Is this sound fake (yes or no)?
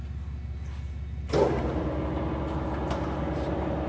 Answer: no